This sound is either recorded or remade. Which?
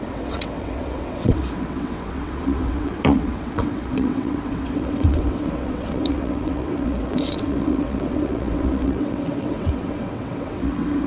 remade